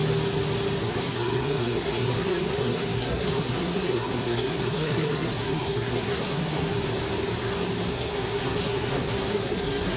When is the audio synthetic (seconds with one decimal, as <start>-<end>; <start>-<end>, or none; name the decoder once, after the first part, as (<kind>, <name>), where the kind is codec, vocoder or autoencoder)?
0.8-6.8 (codec, SNAC); 7.9-10.0